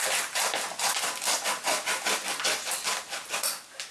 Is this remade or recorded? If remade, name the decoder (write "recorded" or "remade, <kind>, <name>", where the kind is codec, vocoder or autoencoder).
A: recorded